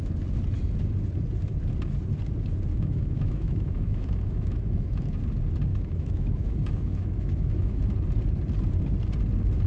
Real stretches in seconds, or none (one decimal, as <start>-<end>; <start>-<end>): 0.0-2.7; 5.2-5.7; 7.8-9.7